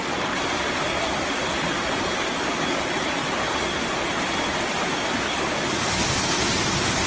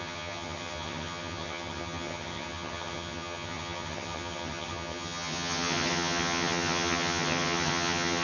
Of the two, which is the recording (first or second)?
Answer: first